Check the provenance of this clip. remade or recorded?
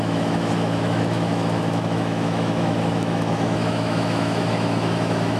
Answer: remade